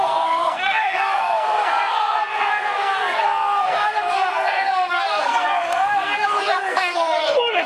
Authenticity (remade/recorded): remade